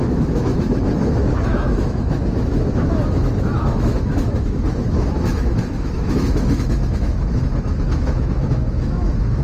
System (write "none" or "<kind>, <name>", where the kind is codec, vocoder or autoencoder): autoencoder, DAC-VAE